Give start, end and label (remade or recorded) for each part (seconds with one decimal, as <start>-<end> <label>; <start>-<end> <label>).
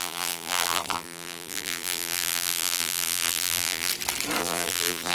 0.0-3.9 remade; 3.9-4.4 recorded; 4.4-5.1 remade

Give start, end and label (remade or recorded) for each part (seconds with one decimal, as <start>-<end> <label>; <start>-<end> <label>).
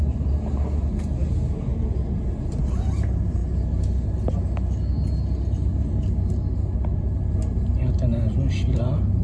0.0-1.7 recorded; 1.7-2.7 remade; 2.7-9.2 recorded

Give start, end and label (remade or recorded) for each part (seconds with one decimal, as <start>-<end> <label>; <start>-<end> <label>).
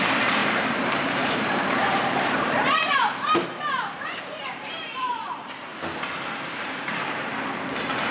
0.0-5.7 remade; 5.7-6.3 recorded; 6.3-8.1 remade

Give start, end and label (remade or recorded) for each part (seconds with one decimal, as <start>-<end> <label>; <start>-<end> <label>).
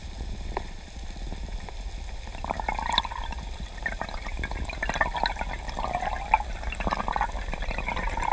0.0-8.3 recorded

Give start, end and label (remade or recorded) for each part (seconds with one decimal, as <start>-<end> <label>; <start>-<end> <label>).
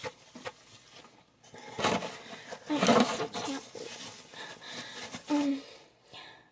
0.0-6.5 recorded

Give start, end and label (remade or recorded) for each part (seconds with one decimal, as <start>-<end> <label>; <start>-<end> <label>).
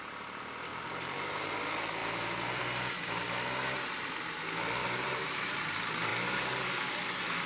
0.0-0.7 recorded; 0.7-1.5 remade; 1.5-2.0 recorded; 2.0-2.6 remade; 2.6-4.8 recorded; 4.8-5.6 remade; 5.6-7.5 recorded